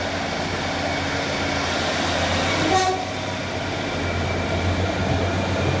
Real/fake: real